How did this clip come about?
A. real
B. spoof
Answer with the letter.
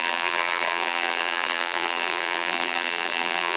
B